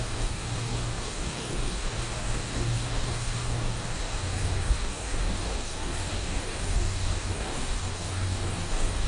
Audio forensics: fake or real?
fake